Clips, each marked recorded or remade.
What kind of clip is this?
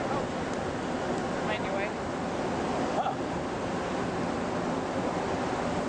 recorded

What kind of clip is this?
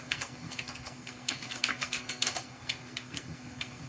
remade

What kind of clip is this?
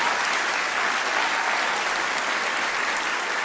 recorded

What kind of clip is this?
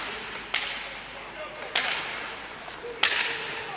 recorded